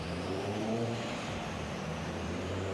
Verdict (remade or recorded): remade